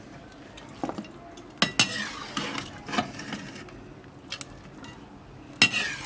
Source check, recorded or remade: recorded